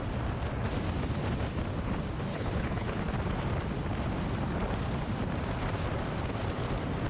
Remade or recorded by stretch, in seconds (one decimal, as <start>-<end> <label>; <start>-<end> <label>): 0.0-2.3 recorded; 2.3-3.0 remade; 3.0-7.1 recorded